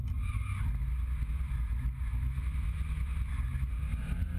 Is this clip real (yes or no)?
yes